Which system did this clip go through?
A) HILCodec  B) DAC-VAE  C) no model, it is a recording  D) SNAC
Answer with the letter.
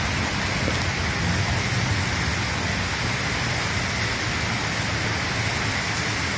C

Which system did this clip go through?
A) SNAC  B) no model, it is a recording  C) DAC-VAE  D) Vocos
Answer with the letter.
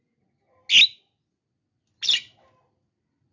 B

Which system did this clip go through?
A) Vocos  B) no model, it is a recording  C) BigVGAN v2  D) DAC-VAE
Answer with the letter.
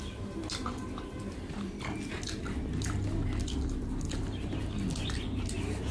B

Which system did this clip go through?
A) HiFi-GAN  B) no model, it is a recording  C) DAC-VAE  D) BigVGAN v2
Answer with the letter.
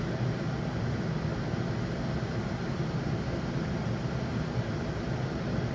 B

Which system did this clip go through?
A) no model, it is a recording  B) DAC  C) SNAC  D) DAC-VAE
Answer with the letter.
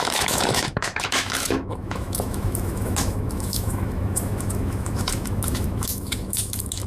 D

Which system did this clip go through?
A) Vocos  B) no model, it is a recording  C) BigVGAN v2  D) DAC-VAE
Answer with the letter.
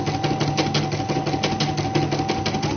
B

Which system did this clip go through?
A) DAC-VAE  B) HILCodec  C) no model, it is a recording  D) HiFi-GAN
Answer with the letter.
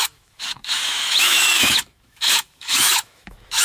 A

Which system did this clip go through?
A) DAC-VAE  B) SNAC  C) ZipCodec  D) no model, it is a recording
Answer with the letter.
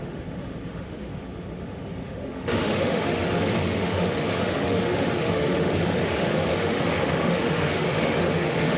A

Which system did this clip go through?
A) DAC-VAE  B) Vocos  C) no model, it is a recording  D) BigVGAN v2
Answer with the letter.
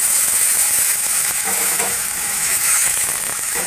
A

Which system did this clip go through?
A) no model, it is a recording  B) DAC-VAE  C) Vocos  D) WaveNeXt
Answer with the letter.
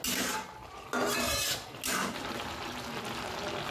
A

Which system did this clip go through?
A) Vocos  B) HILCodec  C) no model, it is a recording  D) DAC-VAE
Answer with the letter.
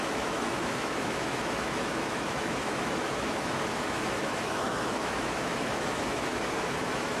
D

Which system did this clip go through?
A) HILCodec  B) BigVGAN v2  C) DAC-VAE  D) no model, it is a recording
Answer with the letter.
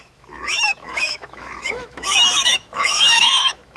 C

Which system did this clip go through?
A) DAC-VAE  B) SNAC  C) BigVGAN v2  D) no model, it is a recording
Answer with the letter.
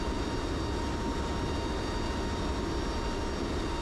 D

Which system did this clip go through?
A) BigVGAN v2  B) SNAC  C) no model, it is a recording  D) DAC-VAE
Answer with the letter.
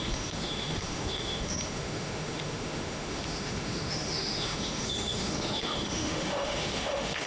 D